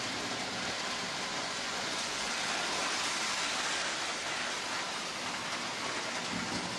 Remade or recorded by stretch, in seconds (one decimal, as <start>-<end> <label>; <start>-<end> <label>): 0.0-1.4 recorded; 1.4-2.3 remade; 2.3-6.8 recorded